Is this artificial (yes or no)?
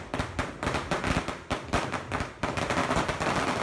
no